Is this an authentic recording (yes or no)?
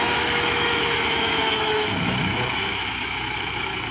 no